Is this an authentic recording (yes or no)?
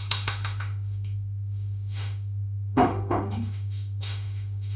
no